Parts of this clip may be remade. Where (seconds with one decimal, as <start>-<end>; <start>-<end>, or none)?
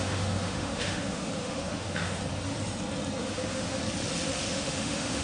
0.0-2.2; 3.2-3.8; 4.4-5.2